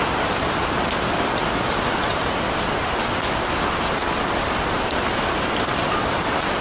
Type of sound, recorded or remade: recorded